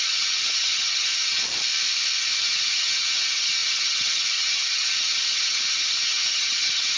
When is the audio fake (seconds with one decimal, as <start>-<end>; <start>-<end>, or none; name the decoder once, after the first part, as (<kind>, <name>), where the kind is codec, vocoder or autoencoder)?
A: 0.0-1.4 (vocoder, HiFi-GAN); 2.2-7.0